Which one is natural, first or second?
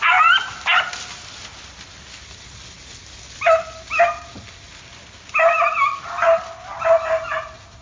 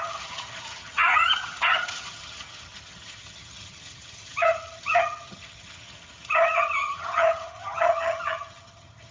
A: first